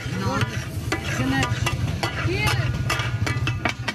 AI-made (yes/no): no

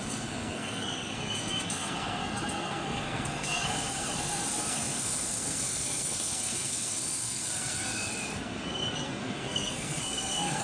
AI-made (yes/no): yes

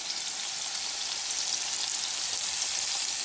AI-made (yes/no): no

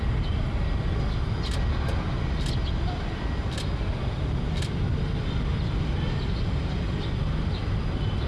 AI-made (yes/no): no